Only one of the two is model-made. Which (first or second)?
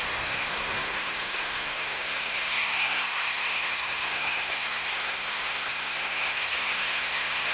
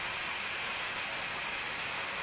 first